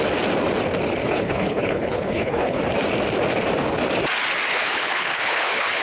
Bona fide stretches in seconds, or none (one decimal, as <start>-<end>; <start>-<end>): 0.0-1.0; 2.6-4.5